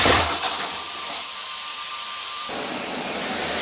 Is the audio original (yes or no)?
no